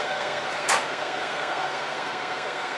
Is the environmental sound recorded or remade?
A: remade